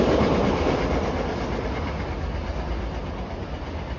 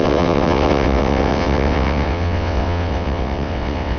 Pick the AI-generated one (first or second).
second